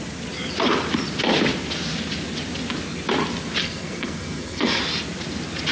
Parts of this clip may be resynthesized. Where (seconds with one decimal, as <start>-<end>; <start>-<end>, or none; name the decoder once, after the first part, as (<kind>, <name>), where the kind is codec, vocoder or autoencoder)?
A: 3.6-4.8 (codec, SNAC)

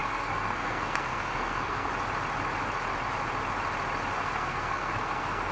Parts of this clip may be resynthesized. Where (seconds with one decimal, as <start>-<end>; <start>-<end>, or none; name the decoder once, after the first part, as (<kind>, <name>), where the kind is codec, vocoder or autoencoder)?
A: 0.0-1.9 (codec, SNAC); 4.1-5.5

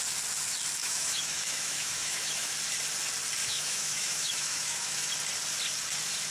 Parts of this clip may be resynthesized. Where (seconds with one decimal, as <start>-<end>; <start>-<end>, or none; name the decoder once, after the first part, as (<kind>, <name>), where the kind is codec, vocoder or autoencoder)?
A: 0.8-2.5 (autoencoder, DAC-VAE); 3.4-5.1

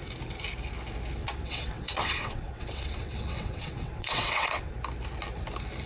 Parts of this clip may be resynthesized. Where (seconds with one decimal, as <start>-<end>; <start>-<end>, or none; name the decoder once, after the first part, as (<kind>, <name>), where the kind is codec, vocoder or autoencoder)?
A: 1.2-4.7 (vocoder, WaveNeXt)